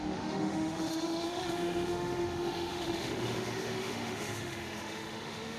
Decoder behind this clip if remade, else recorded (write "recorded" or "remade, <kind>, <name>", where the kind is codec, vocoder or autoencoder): remade, autoencoder, DAC-VAE